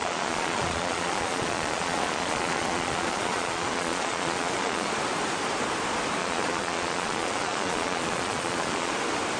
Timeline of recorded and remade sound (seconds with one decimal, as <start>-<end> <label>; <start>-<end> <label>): 0.0-4.9 remade; 4.9-6.2 recorded; 6.2-8.9 remade; 8.9-9.4 recorded